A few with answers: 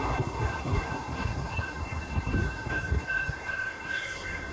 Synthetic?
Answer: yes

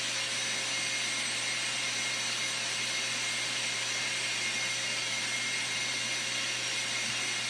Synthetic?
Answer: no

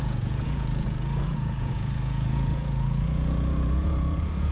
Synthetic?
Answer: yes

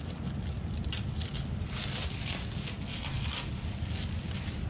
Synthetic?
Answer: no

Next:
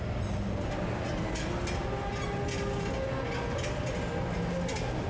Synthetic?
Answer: no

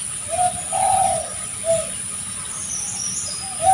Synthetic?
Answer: no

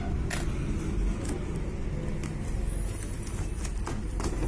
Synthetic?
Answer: no